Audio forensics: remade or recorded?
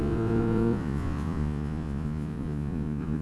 remade